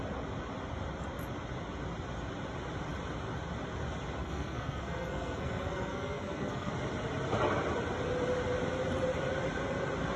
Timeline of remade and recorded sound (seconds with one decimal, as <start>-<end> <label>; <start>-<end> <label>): 0.0-4.2 recorded; 4.2-6.7 remade; 6.7-10.2 recorded